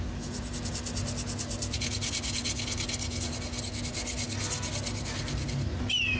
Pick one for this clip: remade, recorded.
recorded